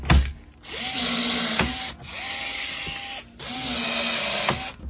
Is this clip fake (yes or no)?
no